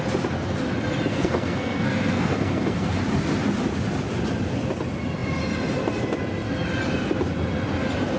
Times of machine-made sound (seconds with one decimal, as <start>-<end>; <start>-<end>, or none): 1.1-3.0